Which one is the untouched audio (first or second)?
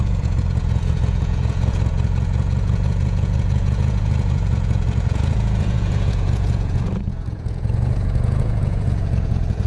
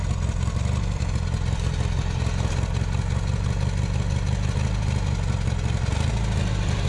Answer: second